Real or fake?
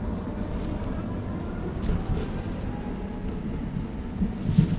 fake